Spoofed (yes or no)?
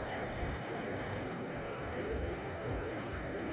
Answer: yes